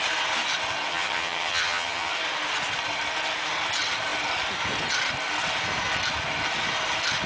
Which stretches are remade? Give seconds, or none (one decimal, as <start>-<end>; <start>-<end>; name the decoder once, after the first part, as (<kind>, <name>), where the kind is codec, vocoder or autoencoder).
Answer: 0.9-2.1 (vocoder, HiFi-GAN)